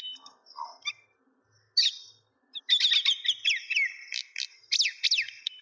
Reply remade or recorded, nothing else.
recorded